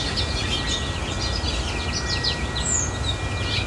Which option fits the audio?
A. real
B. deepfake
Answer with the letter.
A